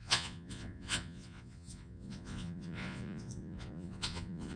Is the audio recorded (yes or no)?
no